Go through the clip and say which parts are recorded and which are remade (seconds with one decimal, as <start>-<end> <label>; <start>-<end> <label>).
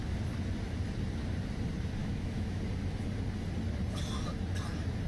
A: 0.0-2.0 recorded; 2.0-2.6 remade; 2.6-5.1 recorded